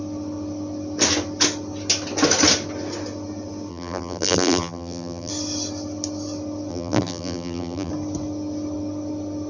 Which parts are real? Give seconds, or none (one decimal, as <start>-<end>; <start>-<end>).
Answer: 0.0-3.7; 5.3-6.7; 7.9-9.5